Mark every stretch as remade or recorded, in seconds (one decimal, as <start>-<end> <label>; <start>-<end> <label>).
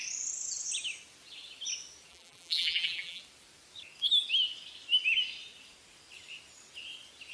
0.0-2.1 recorded; 2.1-3.2 remade; 3.2-7.3 recorded